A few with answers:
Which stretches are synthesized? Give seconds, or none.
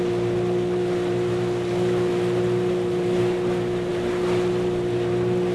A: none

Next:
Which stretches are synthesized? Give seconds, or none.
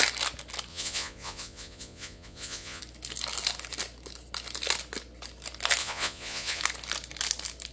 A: 0.7-2.8 (vocoder, Vocos); 5.8-6.6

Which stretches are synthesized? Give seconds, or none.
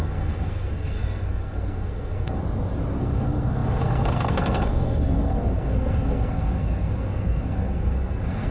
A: 0.0-2.4 (codec, SNAC); 3.0-8.5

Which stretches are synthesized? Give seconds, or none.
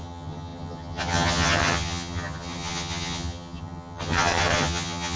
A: 0.0-5.2 (vocoder, HiFi-GAN)